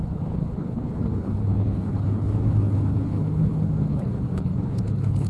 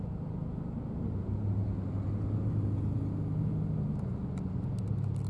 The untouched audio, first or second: second